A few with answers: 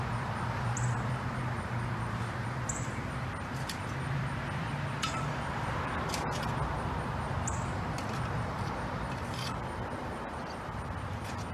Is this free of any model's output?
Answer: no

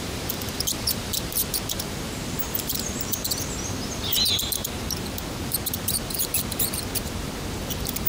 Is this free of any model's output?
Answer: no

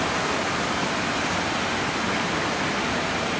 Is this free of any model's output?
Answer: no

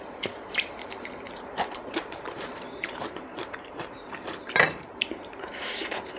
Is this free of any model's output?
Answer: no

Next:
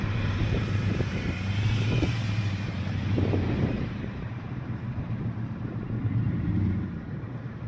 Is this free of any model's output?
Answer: no